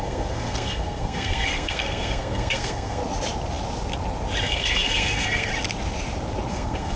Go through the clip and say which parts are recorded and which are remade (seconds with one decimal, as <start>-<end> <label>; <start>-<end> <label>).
0.0-3.0 remade; 3.0-4.4 recorded; 4.4-5.5 remade; 5.5-6.5 recorded; 6.5-7.0 remade